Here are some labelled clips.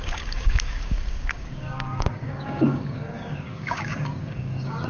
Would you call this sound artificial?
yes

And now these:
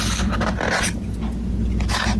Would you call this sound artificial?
no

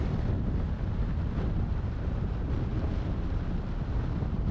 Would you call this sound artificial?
no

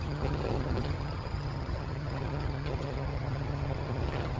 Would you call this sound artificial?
yes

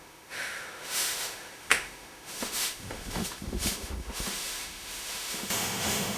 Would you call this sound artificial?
yes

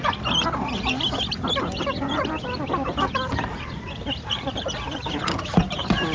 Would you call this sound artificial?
no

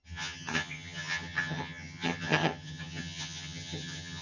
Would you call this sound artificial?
yes